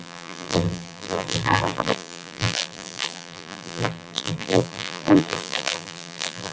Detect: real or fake fake